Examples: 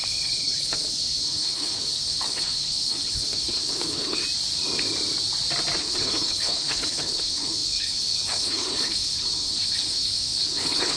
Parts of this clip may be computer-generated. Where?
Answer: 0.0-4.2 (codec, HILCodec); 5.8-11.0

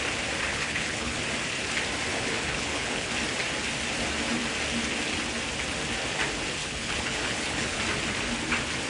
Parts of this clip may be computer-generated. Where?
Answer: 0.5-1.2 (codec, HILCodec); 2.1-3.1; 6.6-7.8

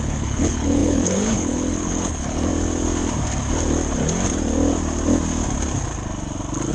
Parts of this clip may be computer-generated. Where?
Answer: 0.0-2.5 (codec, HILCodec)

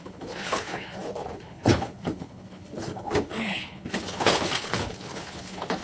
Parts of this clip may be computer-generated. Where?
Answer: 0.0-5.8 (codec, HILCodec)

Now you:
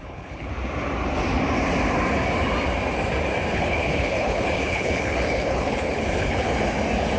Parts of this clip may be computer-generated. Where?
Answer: 0.0-0.5 (codec, HILCodec); 3.5-6.5

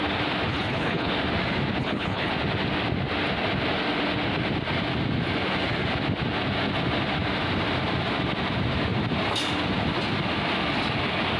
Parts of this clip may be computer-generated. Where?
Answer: 0.5-1.1 (codec, HILCodec); 1.8-2.3